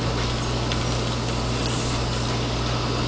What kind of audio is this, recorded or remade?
recorded